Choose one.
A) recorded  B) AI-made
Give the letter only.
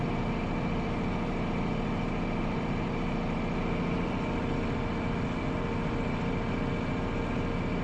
A